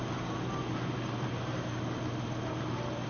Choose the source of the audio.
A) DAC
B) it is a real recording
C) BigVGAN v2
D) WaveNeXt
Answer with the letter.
B